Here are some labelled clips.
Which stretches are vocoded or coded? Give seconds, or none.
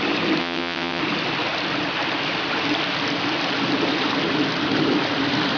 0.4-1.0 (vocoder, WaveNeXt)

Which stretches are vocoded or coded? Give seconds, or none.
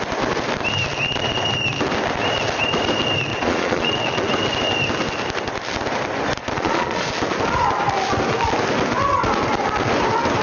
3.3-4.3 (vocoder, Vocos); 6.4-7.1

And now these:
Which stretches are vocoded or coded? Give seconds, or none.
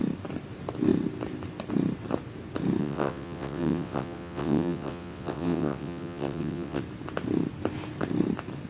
2.8-6.8 (vocoder, WaveNeXt)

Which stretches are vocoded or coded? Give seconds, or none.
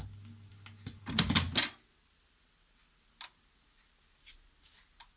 none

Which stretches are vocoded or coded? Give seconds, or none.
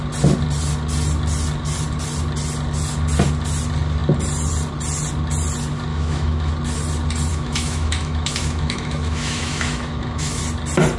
5.9-6.5 (autoencoder, DAC-VAE); 7.3-10.4